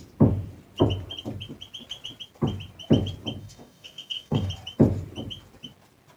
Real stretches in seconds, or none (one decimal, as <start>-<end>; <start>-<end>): 0.0-3.4; 4.5-6.2